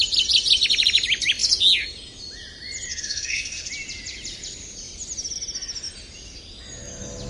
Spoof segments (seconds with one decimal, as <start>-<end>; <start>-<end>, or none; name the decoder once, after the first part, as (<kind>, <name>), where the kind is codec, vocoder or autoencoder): 2.9-3.7 (codec, SNAC)